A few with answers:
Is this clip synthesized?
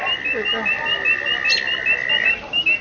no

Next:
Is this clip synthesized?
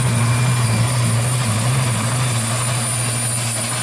no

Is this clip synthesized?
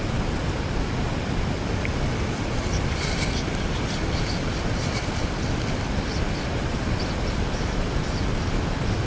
no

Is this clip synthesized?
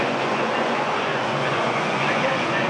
yes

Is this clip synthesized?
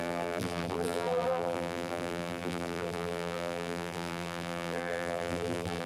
yes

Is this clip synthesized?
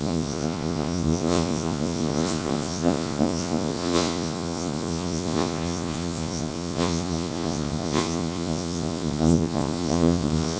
yes